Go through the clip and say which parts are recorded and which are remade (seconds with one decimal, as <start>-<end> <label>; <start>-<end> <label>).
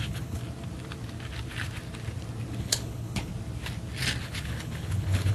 0.0-0.4 remade; 0.4-2.6 recorded; 2.6-3.3 remade; 3.3-4.2 recorded; 4.2-5.3 remade